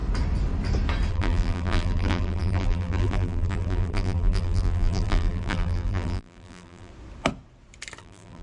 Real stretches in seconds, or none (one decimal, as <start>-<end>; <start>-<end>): 0.0-1.1; 6.9-8.0